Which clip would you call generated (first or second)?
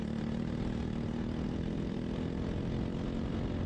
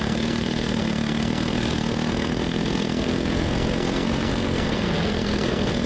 second